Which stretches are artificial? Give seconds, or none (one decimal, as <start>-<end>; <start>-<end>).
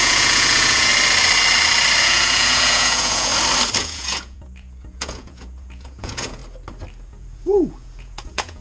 0.0-0.9; 2.0-3.3; 3.8-6.4; 7.1-8.6